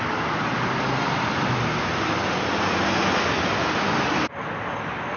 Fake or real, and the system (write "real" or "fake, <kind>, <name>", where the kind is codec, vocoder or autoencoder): real